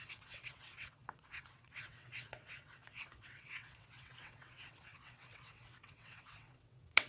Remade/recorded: remade